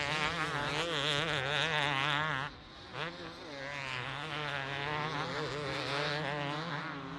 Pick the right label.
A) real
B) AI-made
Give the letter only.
A